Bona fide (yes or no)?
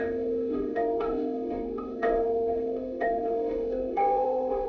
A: no